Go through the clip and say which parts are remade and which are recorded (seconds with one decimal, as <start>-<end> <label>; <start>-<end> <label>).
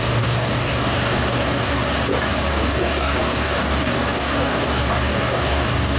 0.0-1.8 remade; 1.8-2.5 recorded; 2.5-6.0 remade